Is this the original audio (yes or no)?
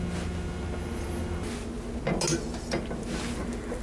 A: yes